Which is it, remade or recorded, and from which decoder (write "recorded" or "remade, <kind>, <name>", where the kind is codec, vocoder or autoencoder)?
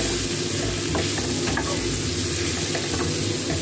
recorded